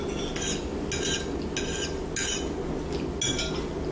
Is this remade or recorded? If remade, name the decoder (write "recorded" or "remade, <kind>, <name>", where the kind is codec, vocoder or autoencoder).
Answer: recorded